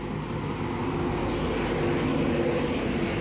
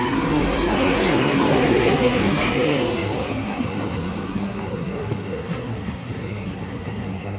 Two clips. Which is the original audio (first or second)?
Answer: first